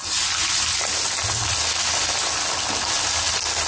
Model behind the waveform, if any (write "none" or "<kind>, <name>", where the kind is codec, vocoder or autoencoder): none